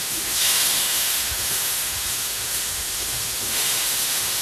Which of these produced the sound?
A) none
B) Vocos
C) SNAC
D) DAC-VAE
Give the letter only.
D